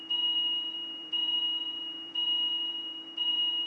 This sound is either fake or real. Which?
fake